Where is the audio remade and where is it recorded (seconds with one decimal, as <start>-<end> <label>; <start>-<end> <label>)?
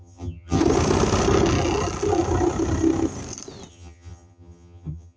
0.0-0.6 remade; 0.6-3.7 recorded; 3.7-5.2 remade